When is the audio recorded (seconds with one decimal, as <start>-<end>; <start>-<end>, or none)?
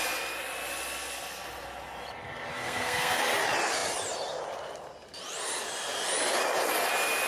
0.0-2.5; 3.2-7.3